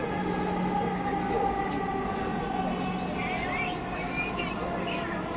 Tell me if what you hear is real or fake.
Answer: real